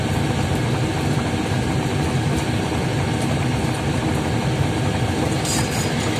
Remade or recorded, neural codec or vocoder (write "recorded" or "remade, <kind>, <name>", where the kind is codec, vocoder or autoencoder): recorded